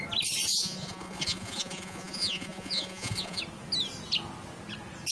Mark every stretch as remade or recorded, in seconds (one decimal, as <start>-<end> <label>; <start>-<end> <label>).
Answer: 0.0-0.5 recorded; 0.5-3.4 remade; 3.4-5.1 recorded